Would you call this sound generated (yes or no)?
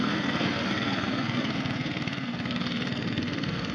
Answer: yes